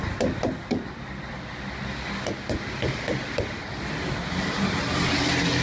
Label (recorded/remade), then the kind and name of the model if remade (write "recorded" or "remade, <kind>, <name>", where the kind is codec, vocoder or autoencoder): recorded